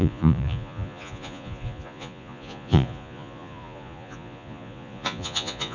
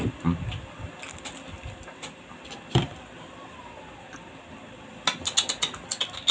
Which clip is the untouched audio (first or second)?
second